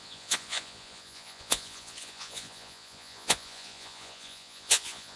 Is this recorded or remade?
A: remade